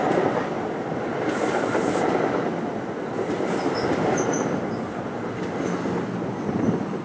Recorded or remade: recorded